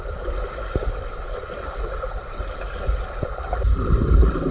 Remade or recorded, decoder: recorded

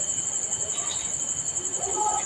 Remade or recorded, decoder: recorded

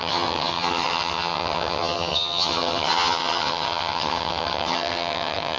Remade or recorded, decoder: remade, vocoder, HiFi-GAN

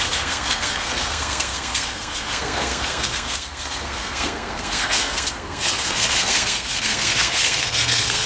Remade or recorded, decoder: remade, codec, SNAC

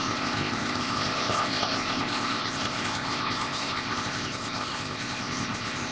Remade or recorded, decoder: remade, codec, ZipCodec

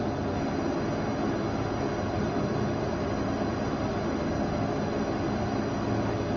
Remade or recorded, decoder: recorded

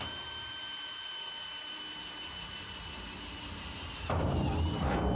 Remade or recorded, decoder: remade, vocoder, BigVGAN v2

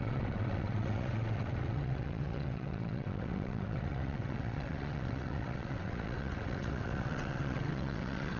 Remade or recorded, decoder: remade, vocoder, WaveNeXt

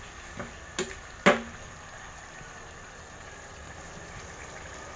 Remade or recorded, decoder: recorded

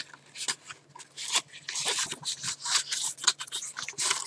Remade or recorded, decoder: recorded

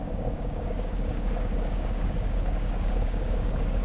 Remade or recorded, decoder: remade, codec, DAC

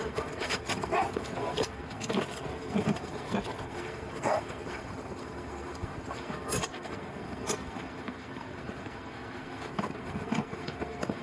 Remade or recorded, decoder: remade, codec, SNAC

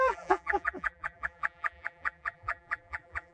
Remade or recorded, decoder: remade, vocoder, BigVGAN v2